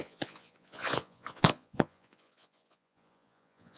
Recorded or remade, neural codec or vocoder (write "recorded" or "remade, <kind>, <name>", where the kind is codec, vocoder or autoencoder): remade, vocoder, Vocos